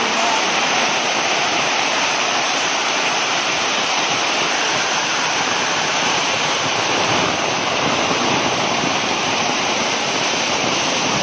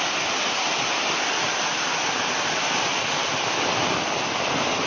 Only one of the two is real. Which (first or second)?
second